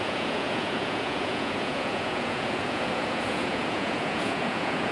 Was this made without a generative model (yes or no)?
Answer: no